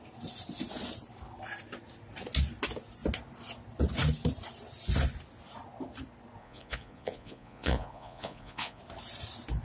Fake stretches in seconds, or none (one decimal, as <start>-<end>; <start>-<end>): 6.4-8.8